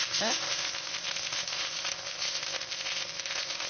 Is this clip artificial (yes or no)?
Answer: yes